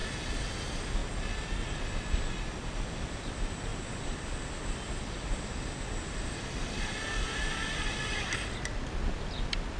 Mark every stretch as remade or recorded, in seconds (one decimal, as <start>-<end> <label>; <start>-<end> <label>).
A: 0.0-9.8 recorded